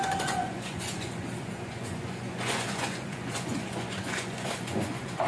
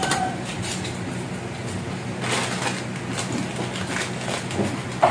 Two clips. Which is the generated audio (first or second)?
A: first